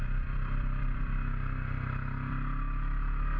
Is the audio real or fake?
fake